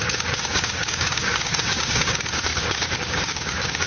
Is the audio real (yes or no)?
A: no